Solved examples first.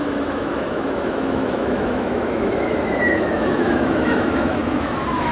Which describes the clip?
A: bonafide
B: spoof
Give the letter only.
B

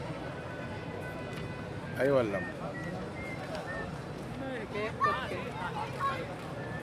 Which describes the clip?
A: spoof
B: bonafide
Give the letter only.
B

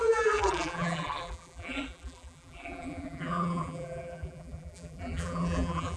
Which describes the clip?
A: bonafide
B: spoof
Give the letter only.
B